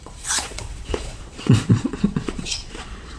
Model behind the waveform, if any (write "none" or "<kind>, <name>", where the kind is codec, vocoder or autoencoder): vocoder, Vocos